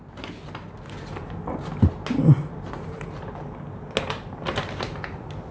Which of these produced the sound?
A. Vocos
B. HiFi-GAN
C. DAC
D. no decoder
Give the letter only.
D